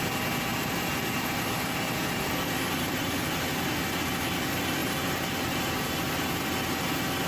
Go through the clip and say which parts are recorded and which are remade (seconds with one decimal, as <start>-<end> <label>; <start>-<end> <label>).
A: 0.0-0.5 recorded; 0.5-3.1 remade; 3.1-4.8 recorded; 4.8-5.6 remade; 5.6-7.3 recorded